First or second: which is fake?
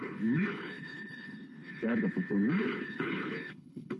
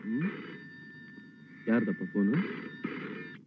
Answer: first